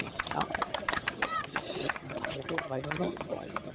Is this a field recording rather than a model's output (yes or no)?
no